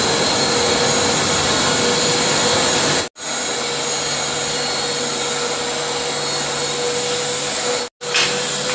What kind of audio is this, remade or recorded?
recorded